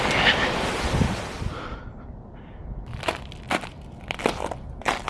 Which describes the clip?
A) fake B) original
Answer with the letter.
B